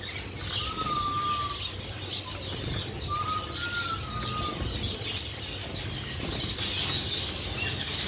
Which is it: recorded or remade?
recorded